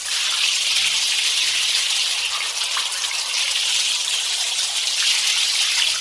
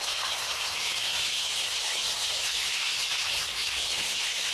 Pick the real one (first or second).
first